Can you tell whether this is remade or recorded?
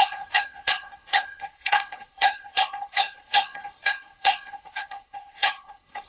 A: remade